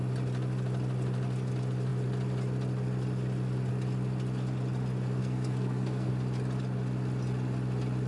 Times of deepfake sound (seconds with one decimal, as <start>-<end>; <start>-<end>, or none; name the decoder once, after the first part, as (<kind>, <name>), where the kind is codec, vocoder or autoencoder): 5.2-6.1 (codec, SNAC)